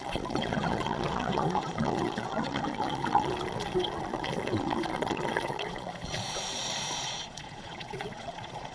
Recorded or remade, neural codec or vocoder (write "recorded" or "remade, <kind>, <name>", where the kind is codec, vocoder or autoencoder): remade, vocoder, Vocos